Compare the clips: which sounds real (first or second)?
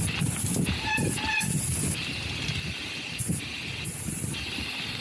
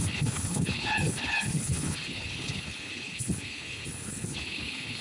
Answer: first